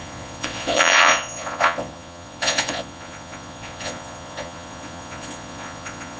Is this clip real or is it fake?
fake